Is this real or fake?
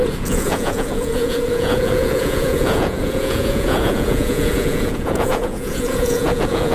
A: fake